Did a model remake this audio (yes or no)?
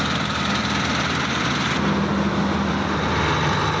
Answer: no